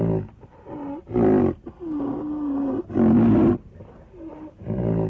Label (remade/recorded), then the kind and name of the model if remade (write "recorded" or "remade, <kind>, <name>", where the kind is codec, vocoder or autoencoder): recorded